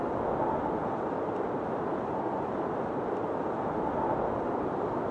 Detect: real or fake real